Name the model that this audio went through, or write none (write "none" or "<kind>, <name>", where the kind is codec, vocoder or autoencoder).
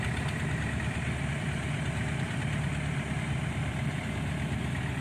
none